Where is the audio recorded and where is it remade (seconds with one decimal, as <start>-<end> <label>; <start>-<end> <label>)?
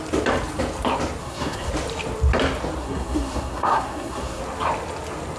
0.0-1.2 recorded; 1.2-1.7 remade; 1.7-2.8 recorded; 2.8-4.4 remade; 4.4-5.4 recorded